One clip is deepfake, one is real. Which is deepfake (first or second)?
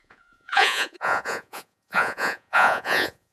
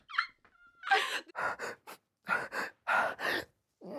first